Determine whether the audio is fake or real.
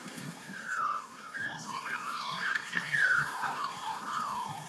fake